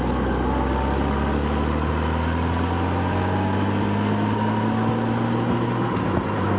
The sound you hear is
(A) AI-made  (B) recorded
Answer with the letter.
B